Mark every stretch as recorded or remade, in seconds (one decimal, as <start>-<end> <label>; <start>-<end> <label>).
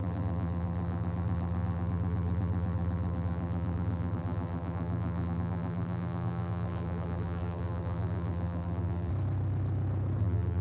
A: 0.0-9.1 remade; 9.1-10.2 recorded; 10.2-10.6 remade